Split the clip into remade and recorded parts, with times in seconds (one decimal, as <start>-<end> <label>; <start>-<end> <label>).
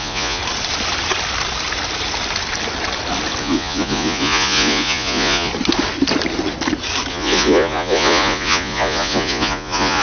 0.0-0.4 remade; 0.4-3.4 recorded; 3.4-5.5 remade; 5.5-7.1 recorded; 7.1-10.0 remade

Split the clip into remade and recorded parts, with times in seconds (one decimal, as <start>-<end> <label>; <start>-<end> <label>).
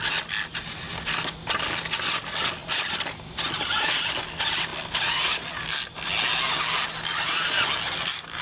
0.0-8.4 recorded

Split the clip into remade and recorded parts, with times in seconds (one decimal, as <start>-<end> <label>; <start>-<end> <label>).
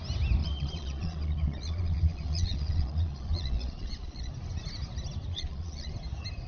0.0-0.4 recorded; 0.4-4.3 remade; 4.3-5.3 recorded; 5.3-5.9 remade; 5.9-6.5 recorded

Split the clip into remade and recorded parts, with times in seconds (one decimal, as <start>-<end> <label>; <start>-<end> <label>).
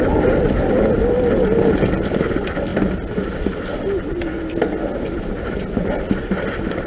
0.0-6.9 recorded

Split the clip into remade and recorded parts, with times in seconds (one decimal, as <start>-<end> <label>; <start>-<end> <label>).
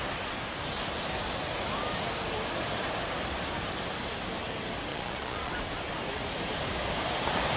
0.0-4.9 recorded; 4.9-5.5 remade; 5.5-7.6 recorded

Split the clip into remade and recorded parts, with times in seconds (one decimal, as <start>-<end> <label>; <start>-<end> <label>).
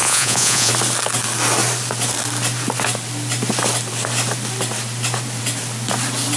0.0-0.7 remade; 0.7-6.4 recorded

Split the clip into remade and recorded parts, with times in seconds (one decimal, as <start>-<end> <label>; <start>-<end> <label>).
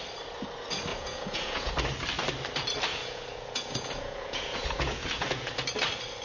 0.0-0.9 recorded; 0.9-1.7 remade; 1.7-2.9 recorded; 2.9-5.6 remade; 5.6-6.2 recorded